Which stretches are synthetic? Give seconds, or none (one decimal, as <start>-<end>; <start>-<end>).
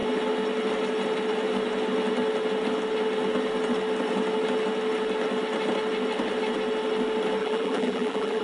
7.4-8.4